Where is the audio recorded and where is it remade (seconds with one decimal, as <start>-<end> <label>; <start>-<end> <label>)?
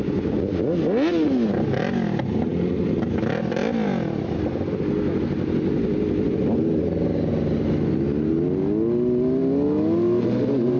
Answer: 0.0-10.8 recorded